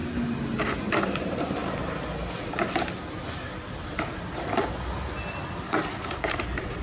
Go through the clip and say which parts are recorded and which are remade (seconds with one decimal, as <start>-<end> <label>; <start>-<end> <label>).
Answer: 0.0-1.0 recorded; 1.0-1.6 remade; 1.6-5.7 recorded; 5.7-6.8 remade